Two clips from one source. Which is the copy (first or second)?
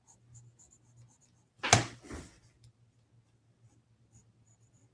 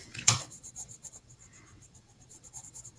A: second